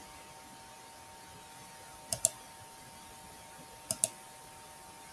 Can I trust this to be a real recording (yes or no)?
yes